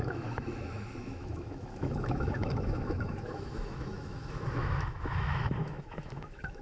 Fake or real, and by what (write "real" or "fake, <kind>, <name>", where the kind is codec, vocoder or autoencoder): fake, autoencoder, DAC-VAE